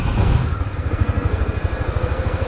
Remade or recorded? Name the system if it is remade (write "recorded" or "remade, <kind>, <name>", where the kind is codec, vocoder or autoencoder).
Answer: remade, codec, SNAC